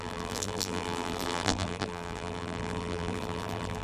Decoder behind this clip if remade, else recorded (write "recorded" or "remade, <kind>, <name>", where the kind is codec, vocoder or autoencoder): remade, vocoder, BigVGAN v2